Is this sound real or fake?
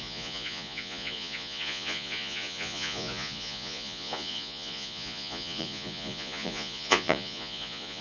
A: fake